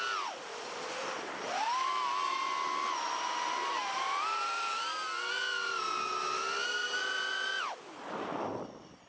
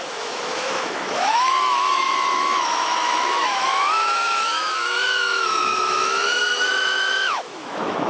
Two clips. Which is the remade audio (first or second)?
second